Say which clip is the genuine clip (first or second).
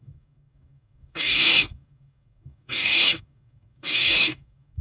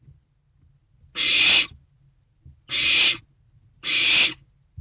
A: second